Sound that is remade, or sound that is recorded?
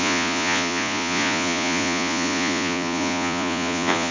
remade